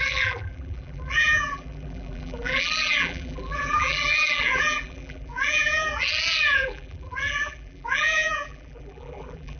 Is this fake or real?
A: fake